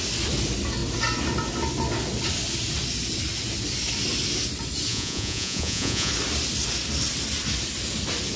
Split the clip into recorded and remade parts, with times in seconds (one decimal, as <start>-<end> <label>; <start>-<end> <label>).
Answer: 0.0-4.9 recorded; 4.9-6.1 remade; 6.1-8.4 recorded